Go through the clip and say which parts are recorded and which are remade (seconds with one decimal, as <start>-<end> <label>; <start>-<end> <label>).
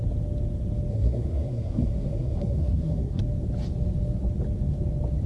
0.0-0.9 recorded; 0.9-3.2 remade; 3.2-5.3 recorded